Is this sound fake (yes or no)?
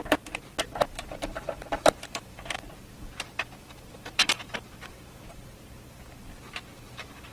yes